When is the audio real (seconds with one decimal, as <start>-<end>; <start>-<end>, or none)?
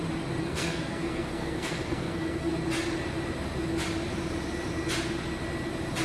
0.0-0.4; 2.5-6.0